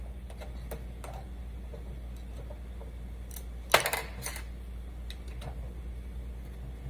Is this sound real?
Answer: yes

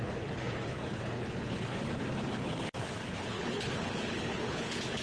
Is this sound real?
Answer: no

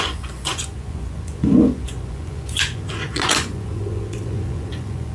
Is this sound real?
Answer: no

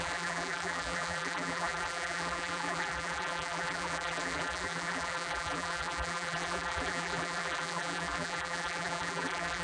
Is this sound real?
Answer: no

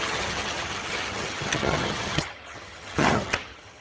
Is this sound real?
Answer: no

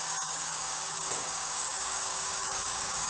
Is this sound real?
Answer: no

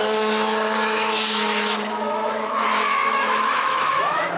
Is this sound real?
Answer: no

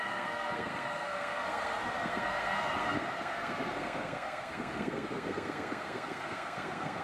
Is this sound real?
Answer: no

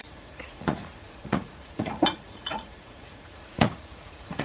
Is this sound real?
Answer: no